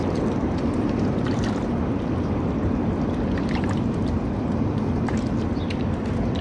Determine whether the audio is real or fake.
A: fake